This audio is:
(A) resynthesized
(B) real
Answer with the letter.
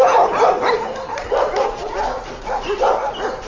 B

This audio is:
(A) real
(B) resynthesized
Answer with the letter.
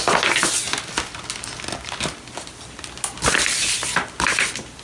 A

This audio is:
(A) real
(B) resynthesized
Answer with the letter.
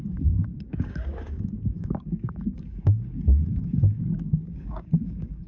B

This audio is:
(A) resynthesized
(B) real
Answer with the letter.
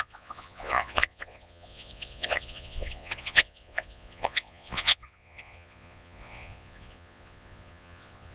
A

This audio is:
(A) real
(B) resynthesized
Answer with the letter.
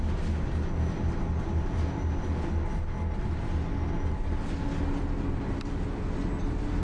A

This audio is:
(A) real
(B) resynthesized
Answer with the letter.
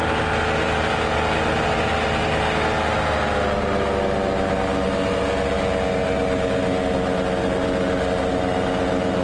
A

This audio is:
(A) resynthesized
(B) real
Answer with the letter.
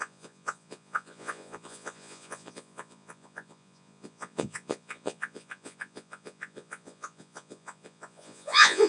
A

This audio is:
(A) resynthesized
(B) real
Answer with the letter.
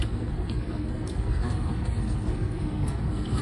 A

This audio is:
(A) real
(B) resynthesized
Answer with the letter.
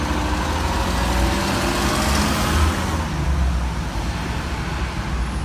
A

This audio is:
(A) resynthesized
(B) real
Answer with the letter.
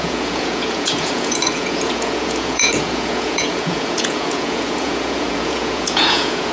A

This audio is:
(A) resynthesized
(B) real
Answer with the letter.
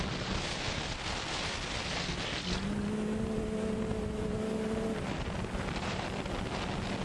B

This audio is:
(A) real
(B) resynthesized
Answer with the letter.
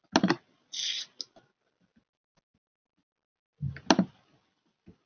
A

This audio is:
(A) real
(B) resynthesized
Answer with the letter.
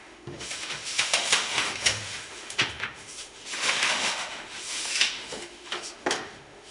B